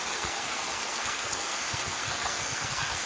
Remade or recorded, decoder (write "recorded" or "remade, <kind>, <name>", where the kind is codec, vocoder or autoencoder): remade, codec, SNAC